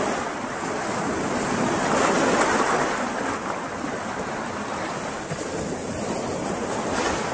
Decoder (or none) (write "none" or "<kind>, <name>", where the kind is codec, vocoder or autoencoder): none